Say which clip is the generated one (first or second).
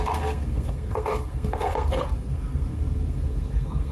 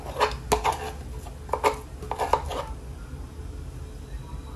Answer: first